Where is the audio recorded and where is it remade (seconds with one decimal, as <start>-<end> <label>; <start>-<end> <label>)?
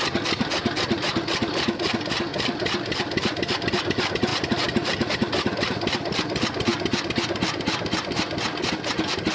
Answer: 0.0-6.7 remade; 6.7-8.9 recorded; 8.9-9.3 remade